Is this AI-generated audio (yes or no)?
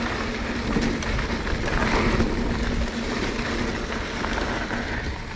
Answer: no